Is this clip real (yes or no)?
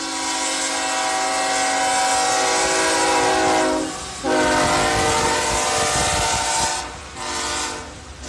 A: yes